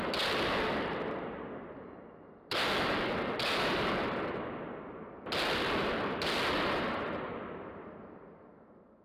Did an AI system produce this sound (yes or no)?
no